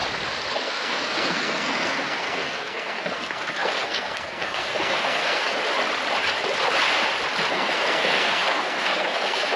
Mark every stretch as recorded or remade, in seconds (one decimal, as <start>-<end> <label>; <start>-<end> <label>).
0.0-0.5 recorded; 0.5-5.6 remade; 5.6-7.5 recorded; 7.5-9.6 remade